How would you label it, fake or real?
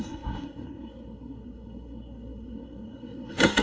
fake